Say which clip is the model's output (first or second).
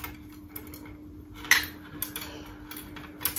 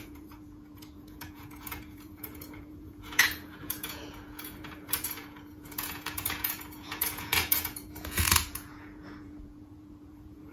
second